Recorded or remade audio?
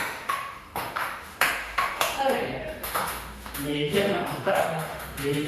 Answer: remade